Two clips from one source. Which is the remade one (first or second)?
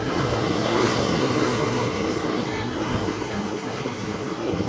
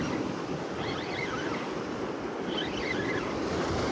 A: first